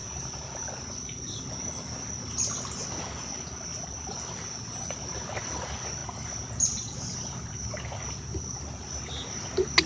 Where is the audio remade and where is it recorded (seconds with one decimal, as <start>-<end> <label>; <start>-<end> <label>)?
0.0-9.9 recorded